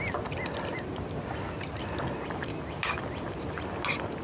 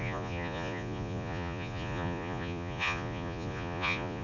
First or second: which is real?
first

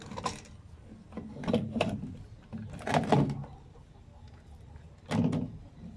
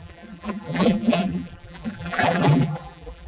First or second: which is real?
first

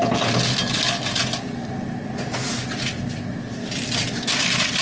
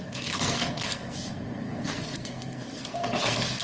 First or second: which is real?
first